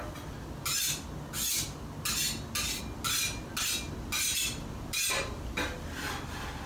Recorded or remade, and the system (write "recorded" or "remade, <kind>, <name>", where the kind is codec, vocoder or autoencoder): recorded